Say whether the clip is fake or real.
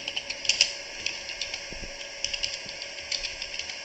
real